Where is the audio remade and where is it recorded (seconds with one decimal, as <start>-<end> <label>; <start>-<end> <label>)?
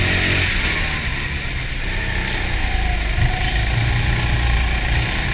0.0-5.3 recorded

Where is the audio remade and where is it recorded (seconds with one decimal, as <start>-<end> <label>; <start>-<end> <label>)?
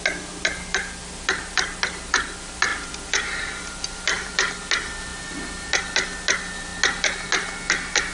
0.0-2.7 recorded; 2.7-4.5 remade; 4.5-8.1 recorded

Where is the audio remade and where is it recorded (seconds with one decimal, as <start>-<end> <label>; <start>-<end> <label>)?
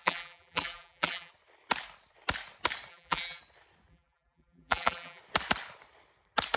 0.0-1.3 remade; 1.3-2.9 recorded; 2.9-3.4 remade; 3.4-3.9 recorded; 3.9-5.2 remade; 5.2-6.6 recorded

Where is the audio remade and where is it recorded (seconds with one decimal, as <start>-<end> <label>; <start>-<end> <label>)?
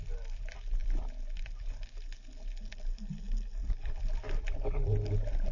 0.0-0.8 recorded; 0.8-1.9 remade; 1.9-3.6 recorded; 3.6-5.5 remade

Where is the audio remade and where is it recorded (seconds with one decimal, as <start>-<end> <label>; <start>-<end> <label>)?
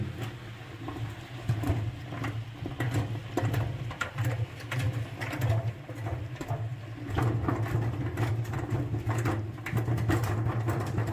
0.0-3.2 recorded; 3.2-5.4 remade; 5.4-11.1 recorded